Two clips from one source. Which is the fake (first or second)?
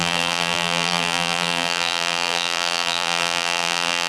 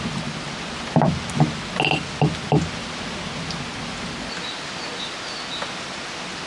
first